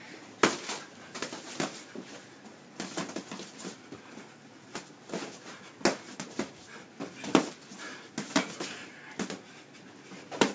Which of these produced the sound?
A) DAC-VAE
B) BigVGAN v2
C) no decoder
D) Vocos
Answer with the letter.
C